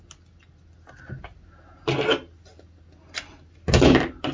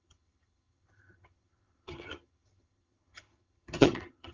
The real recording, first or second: first